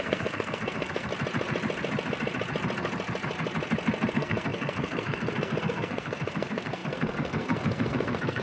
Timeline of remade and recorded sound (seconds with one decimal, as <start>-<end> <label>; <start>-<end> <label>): 0.0-1.1 remade; 1.1-4.1 recorded; 4.1-8.4 remade